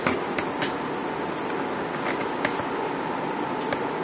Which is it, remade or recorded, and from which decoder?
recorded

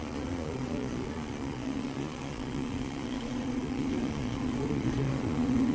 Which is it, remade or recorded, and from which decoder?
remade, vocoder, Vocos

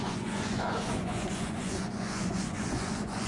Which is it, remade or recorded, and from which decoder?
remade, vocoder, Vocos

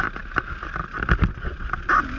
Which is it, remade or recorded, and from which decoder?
recorded